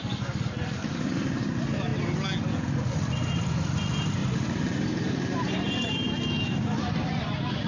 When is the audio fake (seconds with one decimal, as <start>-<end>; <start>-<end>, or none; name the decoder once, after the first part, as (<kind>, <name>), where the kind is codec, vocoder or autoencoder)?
4.2-6.6 (vocoder, BigVGAN v2)